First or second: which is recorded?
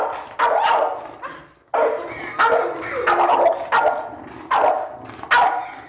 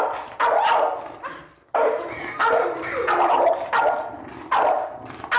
first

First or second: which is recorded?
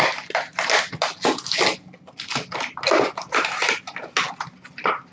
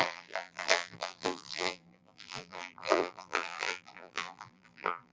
first